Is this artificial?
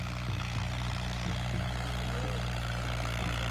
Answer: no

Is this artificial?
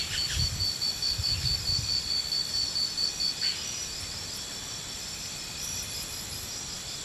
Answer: no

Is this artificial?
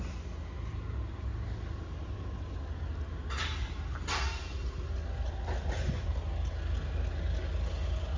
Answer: no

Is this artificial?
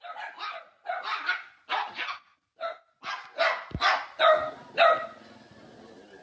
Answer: no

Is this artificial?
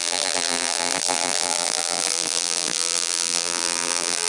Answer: yes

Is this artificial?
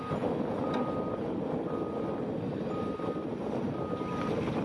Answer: no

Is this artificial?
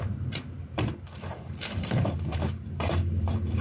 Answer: yes